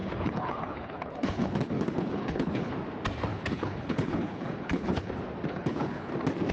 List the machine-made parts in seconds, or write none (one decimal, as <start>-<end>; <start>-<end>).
0.0-2.7; 3.3-5.1; 5.5-6.1